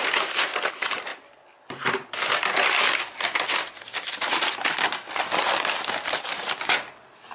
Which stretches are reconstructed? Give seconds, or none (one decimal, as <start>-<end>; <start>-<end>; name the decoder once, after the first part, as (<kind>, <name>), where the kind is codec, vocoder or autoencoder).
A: none